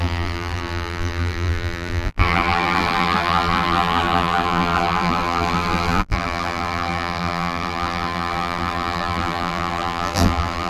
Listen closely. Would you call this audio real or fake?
fake